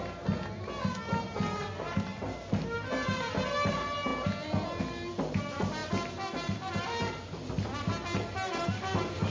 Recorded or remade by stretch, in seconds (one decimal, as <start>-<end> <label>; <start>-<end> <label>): 0.0-9.3 recorded